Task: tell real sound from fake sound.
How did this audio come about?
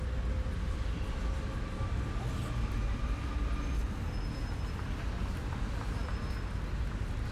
real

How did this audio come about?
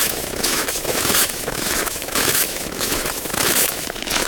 fake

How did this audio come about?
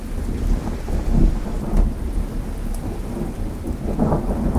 real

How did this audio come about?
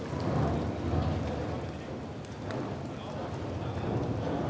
real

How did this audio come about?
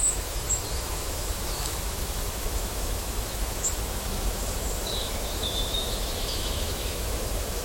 fake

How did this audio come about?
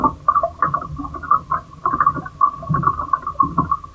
real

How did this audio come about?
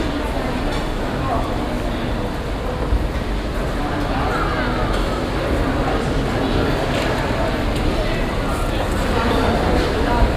real